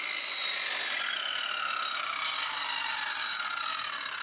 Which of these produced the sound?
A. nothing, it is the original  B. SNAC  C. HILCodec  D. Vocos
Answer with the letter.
A